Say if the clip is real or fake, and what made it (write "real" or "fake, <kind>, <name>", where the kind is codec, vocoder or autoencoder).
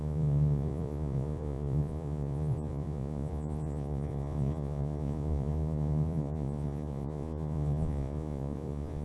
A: fake, vocoder, Vocos